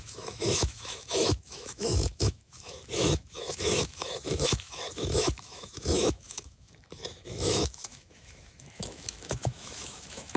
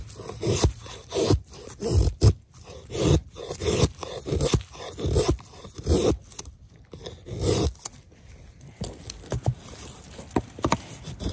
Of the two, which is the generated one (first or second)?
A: first